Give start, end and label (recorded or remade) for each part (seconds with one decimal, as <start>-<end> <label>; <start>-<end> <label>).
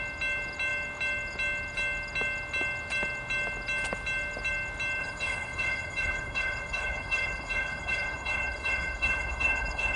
0.0-5.0 recorded; 5.0-10.0 remade